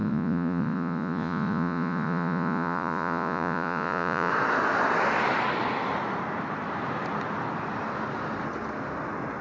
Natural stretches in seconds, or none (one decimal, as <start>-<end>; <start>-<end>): 4.3-9.4